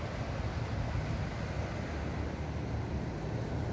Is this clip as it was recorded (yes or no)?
yes